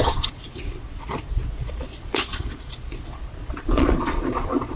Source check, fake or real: fake